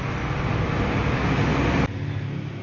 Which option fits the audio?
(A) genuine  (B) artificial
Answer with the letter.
A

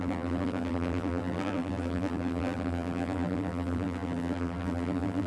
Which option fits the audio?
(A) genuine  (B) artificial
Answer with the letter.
B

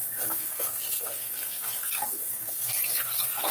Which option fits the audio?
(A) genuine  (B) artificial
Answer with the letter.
B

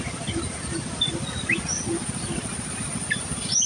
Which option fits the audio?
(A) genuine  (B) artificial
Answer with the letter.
A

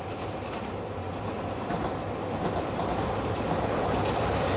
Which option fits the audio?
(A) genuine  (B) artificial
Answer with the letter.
A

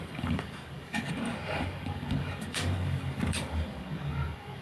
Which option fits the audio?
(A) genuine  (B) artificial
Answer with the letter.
B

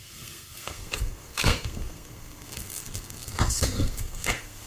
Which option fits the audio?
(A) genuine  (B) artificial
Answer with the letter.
B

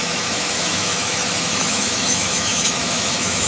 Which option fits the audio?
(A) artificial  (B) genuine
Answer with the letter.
A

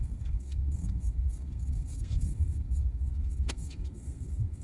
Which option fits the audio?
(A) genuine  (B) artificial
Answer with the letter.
B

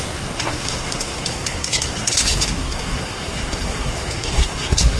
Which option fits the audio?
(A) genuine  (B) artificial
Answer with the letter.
B